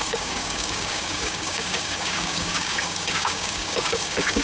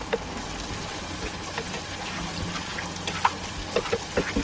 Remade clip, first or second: first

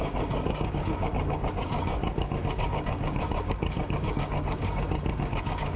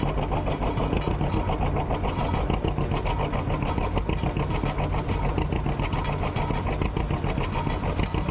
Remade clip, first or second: first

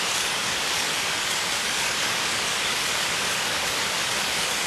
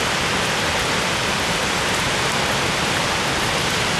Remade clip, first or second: first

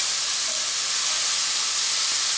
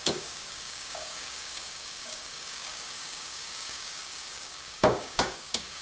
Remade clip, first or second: second